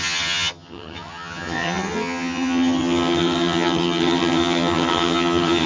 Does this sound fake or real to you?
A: fake